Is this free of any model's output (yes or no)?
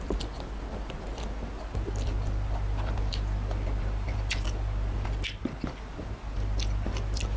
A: yes